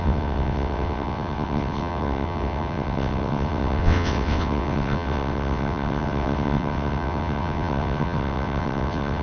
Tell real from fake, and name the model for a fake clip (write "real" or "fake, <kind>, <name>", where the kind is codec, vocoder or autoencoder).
fake, vocoder, WaveNeXt